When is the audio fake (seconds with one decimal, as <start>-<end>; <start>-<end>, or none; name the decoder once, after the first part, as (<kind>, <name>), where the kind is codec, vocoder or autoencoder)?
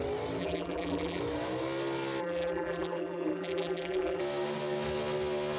0.4-1.2 (vocoder, BigVGAN v2); 2.2-4.2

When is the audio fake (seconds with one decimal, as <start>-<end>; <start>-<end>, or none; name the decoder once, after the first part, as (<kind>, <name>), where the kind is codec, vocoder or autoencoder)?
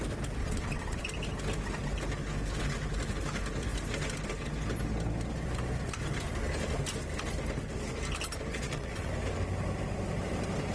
0.4-1.0 (vocoder, WaveNeXt); 8.5-9.1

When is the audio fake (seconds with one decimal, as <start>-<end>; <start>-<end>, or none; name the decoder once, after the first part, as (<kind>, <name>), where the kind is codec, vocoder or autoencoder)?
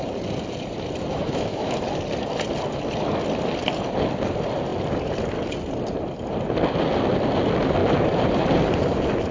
1.1-1.8 (autoencoder, DAC-VAE)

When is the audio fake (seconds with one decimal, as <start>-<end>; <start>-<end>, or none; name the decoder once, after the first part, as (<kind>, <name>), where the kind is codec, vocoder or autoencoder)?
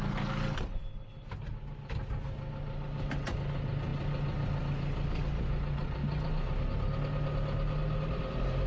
none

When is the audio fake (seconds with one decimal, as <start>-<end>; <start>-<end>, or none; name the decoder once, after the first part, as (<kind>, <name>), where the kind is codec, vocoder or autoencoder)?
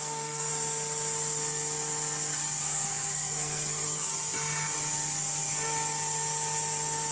0.0-0.5 (codec, SNAC); 2.6-4.1